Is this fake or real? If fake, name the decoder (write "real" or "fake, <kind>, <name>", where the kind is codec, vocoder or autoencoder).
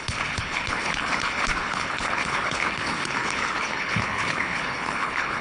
fake, codec, HILCodec